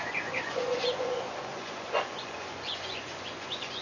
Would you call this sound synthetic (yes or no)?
yes